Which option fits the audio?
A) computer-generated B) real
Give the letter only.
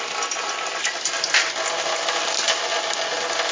B